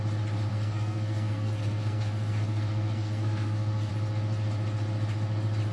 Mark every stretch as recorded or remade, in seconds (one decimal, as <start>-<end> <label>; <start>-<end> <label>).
0.0-0.5 recorded; 0.5-3.9 remade; 3.9-5.7 recorded